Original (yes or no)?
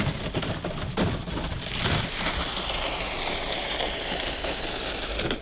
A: yes